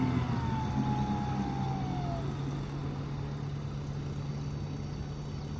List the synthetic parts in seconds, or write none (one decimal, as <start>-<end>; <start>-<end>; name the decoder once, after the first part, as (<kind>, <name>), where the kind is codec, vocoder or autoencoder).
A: none

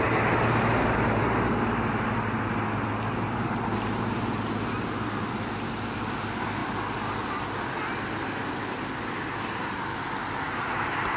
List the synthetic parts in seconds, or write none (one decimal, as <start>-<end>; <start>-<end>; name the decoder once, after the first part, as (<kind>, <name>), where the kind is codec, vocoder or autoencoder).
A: none

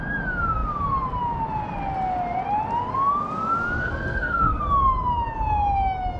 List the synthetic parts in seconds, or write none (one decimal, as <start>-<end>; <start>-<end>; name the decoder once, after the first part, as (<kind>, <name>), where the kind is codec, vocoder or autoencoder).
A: 3.8-4.6 (codec, SNAC)

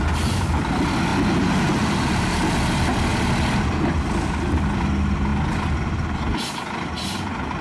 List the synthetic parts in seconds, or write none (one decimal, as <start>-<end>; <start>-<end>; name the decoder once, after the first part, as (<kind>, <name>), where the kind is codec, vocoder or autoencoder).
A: none